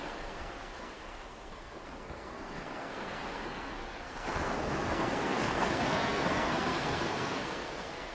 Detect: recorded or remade remade